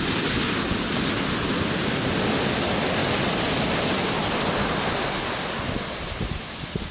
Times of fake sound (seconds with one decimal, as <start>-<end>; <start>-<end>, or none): none